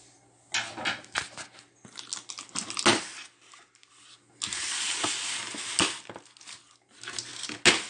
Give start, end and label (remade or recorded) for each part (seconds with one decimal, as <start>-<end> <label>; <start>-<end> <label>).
0.0-7.9 recorded